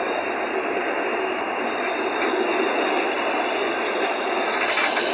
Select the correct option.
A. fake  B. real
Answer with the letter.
B